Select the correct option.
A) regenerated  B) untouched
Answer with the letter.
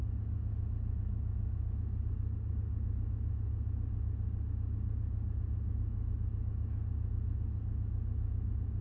B